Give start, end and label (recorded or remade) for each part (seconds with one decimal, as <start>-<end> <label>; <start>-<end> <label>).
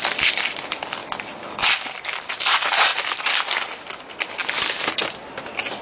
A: 0.0-5.8 recorded